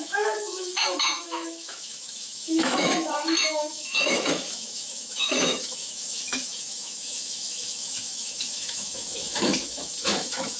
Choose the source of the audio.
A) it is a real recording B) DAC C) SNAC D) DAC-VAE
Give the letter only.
D